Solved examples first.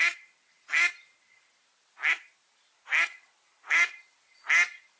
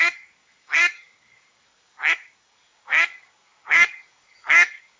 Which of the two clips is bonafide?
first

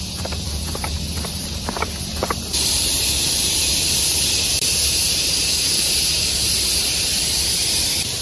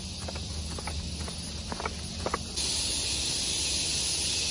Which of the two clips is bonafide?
second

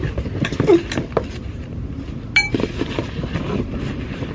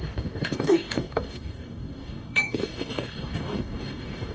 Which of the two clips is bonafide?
first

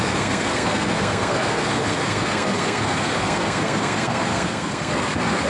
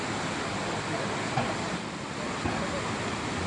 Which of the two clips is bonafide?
second